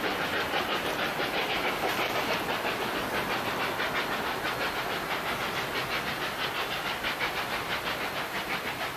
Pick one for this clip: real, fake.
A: real